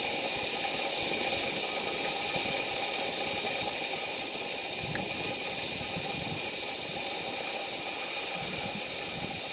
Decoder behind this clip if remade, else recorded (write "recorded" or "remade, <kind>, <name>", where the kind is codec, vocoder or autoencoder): recorded